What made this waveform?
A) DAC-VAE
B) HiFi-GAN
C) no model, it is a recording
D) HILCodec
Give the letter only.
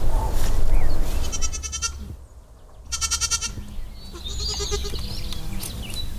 C